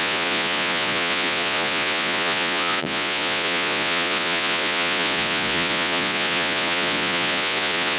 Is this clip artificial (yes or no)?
yes